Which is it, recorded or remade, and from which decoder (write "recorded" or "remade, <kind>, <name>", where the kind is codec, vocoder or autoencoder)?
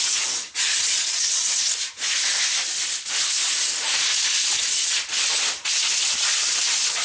recorded